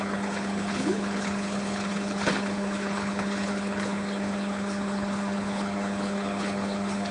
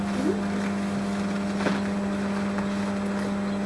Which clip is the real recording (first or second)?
second